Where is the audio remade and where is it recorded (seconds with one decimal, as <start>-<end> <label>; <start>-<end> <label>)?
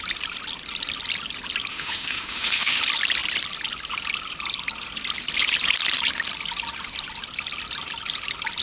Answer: 0.0-1.7 recorded; 1.7-2.8 remade; 2.8-8.6 recorded